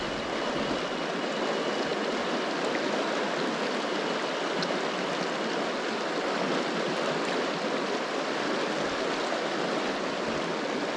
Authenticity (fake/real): real